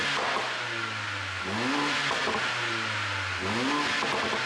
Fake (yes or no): no